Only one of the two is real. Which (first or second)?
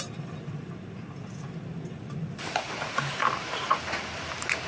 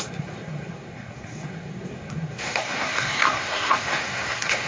first